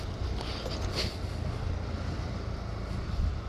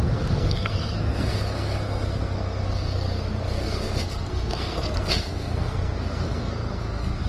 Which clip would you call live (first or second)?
first